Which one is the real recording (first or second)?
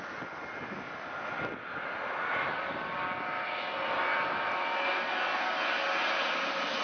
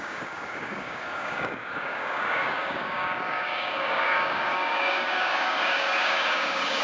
first